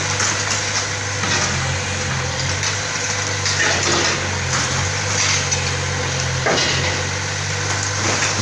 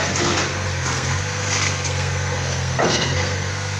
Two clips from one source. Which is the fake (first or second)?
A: second